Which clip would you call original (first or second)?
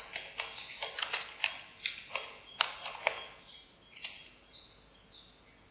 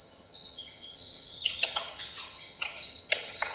first